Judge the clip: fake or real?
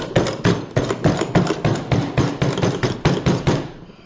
real